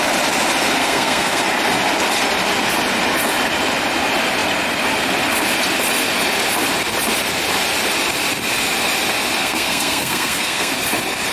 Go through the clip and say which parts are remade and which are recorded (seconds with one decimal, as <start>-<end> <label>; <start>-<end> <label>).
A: 0.0-0.8 recorded; 0.8-1.4 remade; 1.4-9.4 recorded; 9.4-10.7 remade; 10.7-11.3 recorded